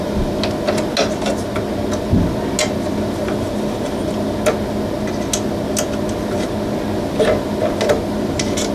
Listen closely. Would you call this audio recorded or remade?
recorded